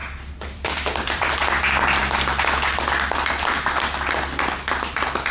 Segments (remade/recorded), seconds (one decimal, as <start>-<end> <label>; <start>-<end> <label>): 0.0-1.3 remade; 1.3-5.3 recorded

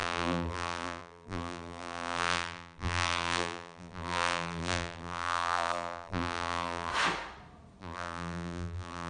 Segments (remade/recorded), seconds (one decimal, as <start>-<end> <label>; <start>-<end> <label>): 0.0-6.9 remade; 6.9-7.8 recorded; 7.8-9.1 remade